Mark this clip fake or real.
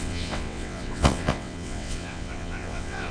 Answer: fake